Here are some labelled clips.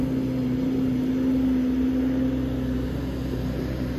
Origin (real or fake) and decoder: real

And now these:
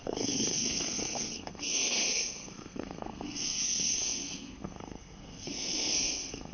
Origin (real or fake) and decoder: fake, codec, SNAC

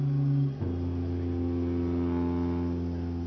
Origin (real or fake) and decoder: real